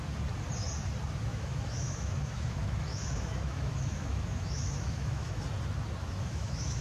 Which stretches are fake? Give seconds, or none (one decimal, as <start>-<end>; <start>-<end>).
1.3-5.4; 6.0-6.8